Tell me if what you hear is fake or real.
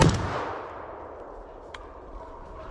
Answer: real